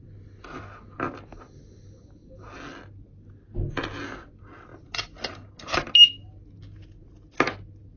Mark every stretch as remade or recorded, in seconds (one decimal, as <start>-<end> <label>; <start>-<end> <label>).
0.0-8.0 recorded